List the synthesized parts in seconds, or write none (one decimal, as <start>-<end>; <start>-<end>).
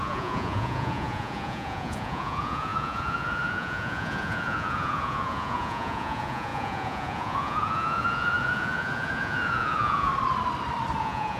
0.0-10.1; 11.0-11.4